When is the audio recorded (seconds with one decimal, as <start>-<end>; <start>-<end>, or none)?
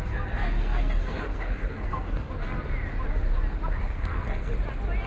2.3-3.8; 4.5-5.1